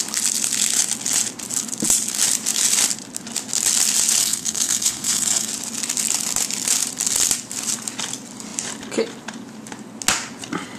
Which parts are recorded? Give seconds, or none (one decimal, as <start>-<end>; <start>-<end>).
0.0-4.2; 5.5-10.8